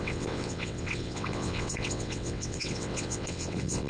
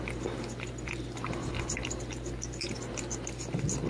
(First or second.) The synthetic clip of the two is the first